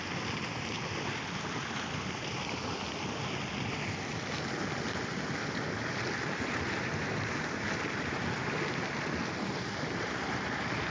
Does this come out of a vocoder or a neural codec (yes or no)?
no